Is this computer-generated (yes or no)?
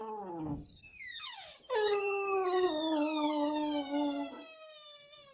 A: yes